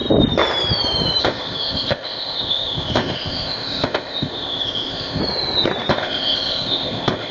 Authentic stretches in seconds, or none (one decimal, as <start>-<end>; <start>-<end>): 0.0-1.2; 5.2-5.9